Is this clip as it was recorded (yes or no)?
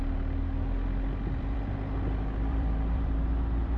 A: no